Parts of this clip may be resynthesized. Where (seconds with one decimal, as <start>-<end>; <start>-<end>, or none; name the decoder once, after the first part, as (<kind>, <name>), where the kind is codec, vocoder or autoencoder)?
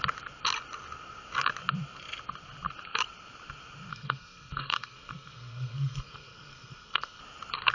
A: 3.9-7.2 (codec, SNAC)